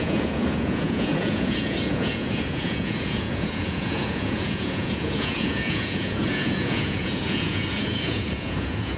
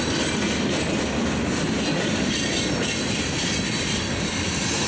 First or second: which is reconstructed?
first